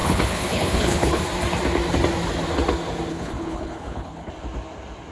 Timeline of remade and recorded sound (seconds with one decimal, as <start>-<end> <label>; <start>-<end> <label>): 0.0-1.2 remade; 1.2-3.1 recorded; 3.1-4.3 remade; 4.3-5.1 recorded